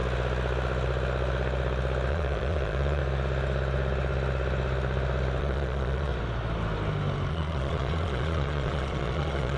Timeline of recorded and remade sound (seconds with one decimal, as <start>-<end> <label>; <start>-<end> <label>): 0.0-2.1 recorded; 2.1-3.0 remade; 3.0-5.4 recorded; 5.4-6.1 remade; 6.1-7.3 recorded; 7.3-9.6 remade